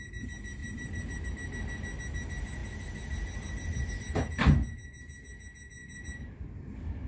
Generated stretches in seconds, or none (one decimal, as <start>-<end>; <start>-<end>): 0.6-1.3; 2.6-3.9; 5.8-7.1